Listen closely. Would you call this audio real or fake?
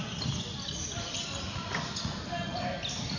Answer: real